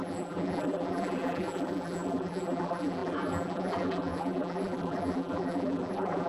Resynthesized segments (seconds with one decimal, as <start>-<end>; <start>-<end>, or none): 0.0-6.3